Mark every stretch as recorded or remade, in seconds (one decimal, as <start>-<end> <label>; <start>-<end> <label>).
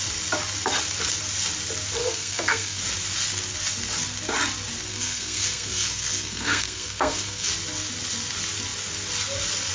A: 0.0-2.0 recorded; 2.0-2.8 remade; 2.8-4.9 recorded; 4.9-7.5 remade; 7.5-9.7 recorded